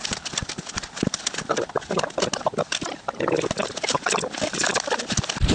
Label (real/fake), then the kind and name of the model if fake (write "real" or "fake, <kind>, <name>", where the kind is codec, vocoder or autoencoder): real